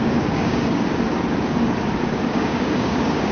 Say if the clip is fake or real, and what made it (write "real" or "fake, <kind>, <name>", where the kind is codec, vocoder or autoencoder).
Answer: fake, codec, DAC